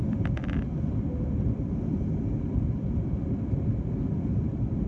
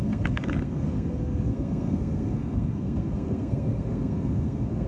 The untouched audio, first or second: first